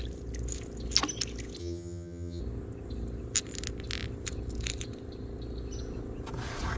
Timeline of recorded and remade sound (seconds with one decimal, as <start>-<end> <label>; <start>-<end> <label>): 0.0-1.6 recorded; 1.6-2.4 remade; 2.4-6.8 recorded